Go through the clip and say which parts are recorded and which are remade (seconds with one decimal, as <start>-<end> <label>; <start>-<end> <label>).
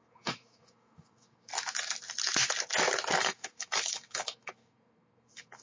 0.0-1.5 remade; 1.5-3.2 recorded; 3.2-5.6 remade